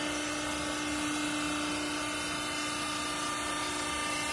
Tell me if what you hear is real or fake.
real